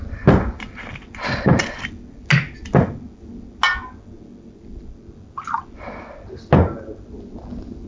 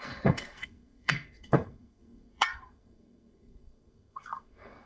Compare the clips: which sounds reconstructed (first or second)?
second